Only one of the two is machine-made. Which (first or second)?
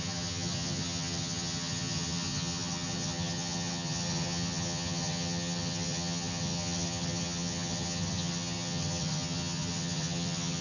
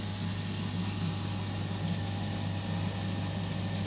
first